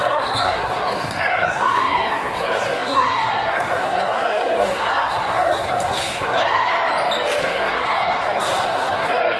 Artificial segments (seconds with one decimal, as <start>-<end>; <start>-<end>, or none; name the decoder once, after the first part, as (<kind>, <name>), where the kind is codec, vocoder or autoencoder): 0.0-6.7 (codec, SNAC); 7.4-9.4